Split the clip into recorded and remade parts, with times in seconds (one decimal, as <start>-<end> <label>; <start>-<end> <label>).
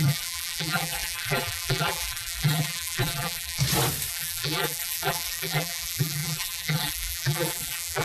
0.0-3.6 remade; 3.6-4.1 recorded; 4.1-8.0 remade